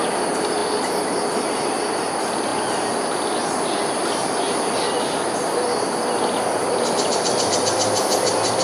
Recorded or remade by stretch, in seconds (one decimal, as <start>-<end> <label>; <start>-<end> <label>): 0.0-4.2 recorded; 4.2-6.9 remade; 6.9-8.6 recorded